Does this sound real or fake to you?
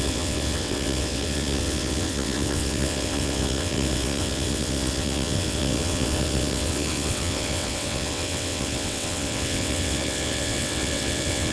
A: fake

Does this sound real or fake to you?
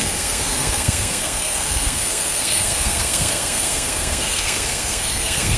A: fake